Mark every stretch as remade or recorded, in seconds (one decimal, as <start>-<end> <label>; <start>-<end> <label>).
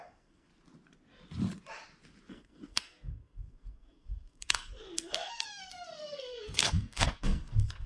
0.0-0.5 remade; 0.5-2.3 recorded; 2.3-7.9 remade